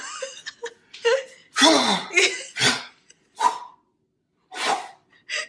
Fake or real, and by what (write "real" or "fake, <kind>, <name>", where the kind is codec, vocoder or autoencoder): real